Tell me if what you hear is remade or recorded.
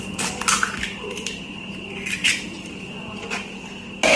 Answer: recorded